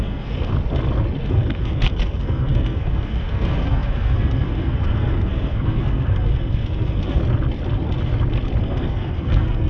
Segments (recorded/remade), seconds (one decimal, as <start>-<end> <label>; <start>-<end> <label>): 0.0-0.5 remade; 0.5-1.3 recorded; 1.3-7.2 remade; 7.2-8.6 recorded; 8.6-9.7 remade